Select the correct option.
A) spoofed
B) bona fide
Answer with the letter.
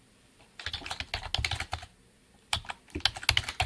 B